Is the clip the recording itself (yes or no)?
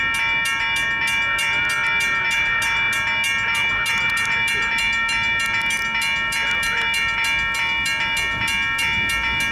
yes